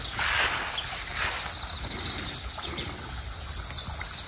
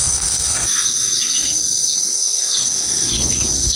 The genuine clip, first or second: first